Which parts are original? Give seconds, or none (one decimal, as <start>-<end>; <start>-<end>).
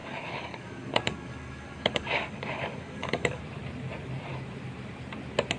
3.4-5.6